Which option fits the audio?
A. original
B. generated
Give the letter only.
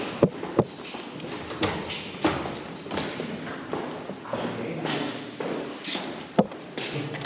A